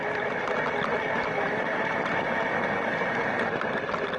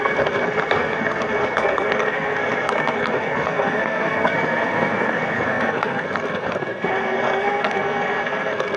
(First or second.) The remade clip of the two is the second